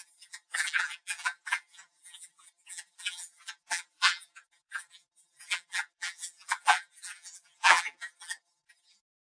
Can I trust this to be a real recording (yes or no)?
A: no